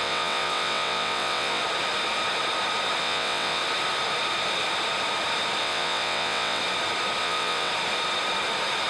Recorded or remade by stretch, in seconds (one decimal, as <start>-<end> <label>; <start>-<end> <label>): 0.0-1.6 remade; 1.6-3.0 recorded; 3.0-3.6 remade; 3.6-5.6 recorded; 5.6-6.6 remade; 6.6-7.2 recorded; 7.2-7.7 remade; 7.7-8.9 recorded